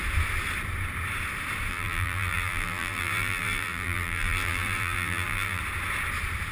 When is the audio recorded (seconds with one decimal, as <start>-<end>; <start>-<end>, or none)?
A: 0.0-1.7; 5.6-6.5